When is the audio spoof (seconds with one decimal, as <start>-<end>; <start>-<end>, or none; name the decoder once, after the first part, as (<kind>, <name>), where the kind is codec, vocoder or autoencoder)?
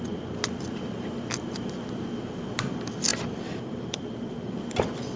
none